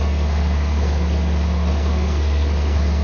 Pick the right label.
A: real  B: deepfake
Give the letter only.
B